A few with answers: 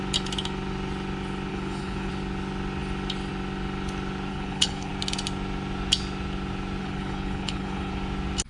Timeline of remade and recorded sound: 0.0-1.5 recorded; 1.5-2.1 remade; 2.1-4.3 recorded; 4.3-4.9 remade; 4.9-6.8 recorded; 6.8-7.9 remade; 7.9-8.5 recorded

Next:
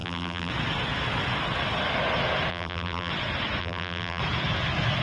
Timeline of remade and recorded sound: 0.0-0.5 remade; 0.5-2.5 recorded; 2.5-3.1 remade; 3.1-3.6 recorded; 3.6-4.2 remade; 4.2-5.0 recorded

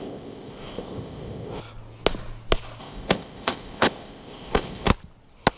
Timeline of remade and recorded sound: 0.0-1.6 remade; 1.6-2.8 recorded; 2.8-4.9 remade; 4.9-5.6 recorded

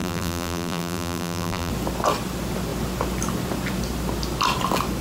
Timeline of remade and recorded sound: 0.0-1.7 remade; 1.7-5.0 recorded

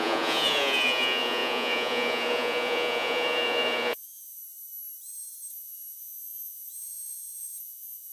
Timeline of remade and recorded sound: 0.0-4.4 remade; 4.4-5.5 recorded; 5.5-8.1 remade

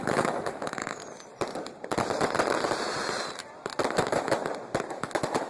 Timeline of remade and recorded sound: 0.0-1.0 remade; 1.0-3.9 recorded; 3.9-4.4 remade; 4.4-4.9 recorded; 4.9-5.5 remade

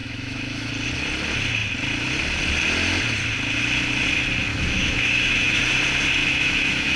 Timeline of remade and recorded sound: 0.0-0.7 remade; 0.7-4.5 recorded; 4.5-5.6 remade; 5.6-6.2 recorded; 6.2-7.0 remade

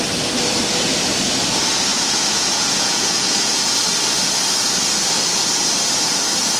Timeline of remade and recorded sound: 0.0-1.9 recorded; 1.9-3.6 remade; 3.6-6.6 recorded